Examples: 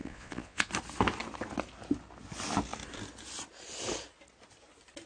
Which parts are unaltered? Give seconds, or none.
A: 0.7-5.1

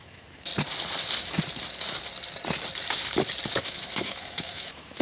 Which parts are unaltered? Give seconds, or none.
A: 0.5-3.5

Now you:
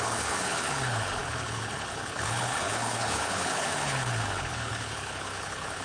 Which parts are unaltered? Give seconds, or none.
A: none

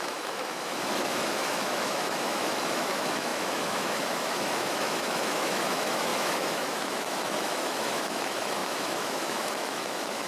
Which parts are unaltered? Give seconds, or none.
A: none

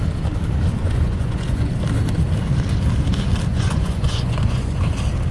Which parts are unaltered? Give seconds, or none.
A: 0.0-0.8; 1.7-3.5; 4.8-5.3

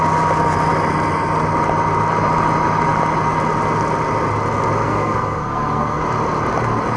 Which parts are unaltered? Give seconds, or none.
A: 0.0-4.8; 6.0-7.0